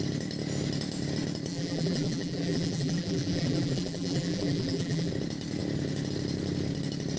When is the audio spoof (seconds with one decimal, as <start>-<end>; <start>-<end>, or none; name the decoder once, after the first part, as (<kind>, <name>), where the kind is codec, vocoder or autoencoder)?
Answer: 1.5-5.1 (vocoder, BigVGAN v2)